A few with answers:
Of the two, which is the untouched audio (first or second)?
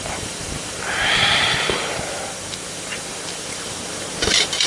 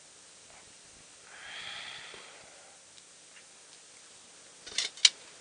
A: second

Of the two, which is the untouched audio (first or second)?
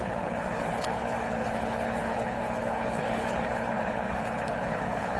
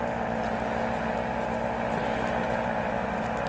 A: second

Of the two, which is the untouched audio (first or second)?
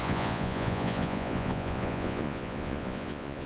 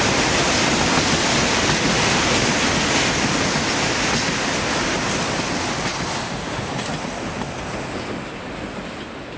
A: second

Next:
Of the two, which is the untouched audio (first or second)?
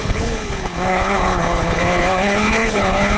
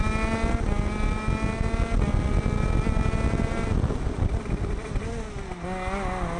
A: second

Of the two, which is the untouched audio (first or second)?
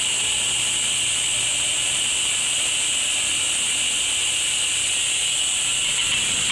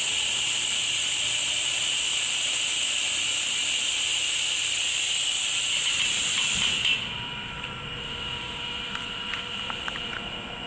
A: first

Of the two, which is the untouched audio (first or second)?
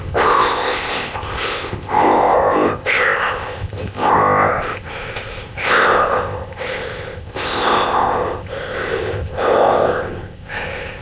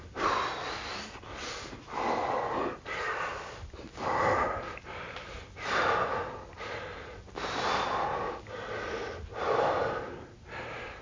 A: second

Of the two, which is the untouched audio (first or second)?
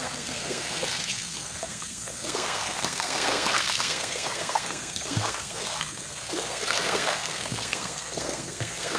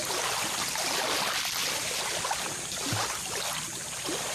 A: second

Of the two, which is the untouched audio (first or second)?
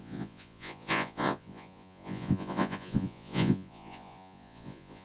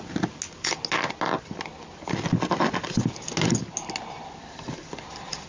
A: second